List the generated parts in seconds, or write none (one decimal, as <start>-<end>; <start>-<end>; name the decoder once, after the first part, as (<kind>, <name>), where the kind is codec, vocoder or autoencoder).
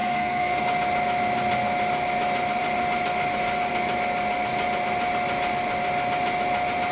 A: 0.0-0.6 (codec, SNAC)